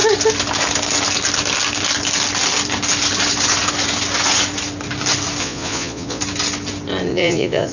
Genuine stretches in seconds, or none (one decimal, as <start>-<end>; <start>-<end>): 0.0-5.4; 6.2-7.1